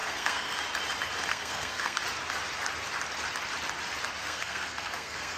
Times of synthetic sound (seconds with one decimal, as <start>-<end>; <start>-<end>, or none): 0.0-0.6; 1.3-2.0; 4.2-5.4